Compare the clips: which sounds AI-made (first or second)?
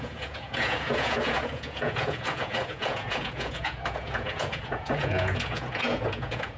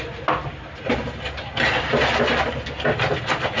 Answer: first